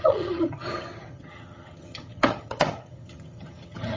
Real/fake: fake